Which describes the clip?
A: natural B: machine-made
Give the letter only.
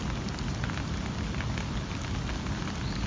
A